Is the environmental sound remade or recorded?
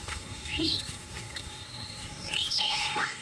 remade